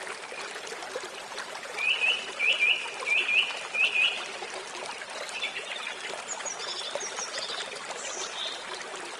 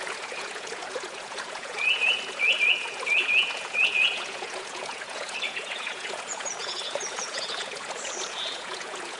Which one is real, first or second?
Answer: first